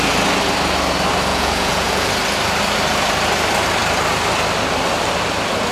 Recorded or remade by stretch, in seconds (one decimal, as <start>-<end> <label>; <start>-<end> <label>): 0.0-1.3 recorded; 1.3-2.1 remade; 2.1-5.7 recorded